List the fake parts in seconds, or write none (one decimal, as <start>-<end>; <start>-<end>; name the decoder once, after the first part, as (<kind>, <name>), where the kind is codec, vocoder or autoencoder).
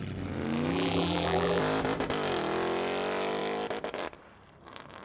0.7-1.6 (vocoder, BigVGAN v2)